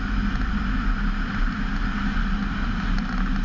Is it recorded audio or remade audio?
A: recorded